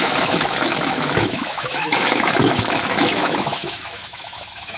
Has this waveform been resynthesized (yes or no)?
yes